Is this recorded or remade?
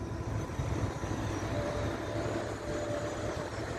remade